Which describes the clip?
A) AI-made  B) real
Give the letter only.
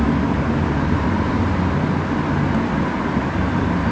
B